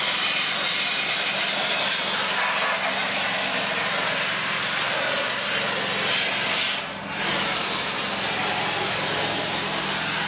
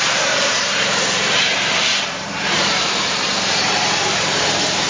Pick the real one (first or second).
first